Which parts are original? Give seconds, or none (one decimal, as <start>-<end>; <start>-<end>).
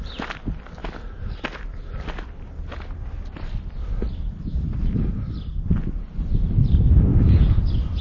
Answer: 0.0-7.1; 7.6-8.0